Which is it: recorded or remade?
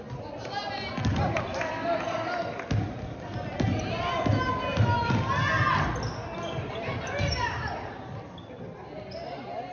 recorded